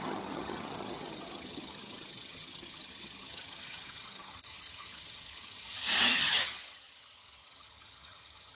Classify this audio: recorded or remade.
remade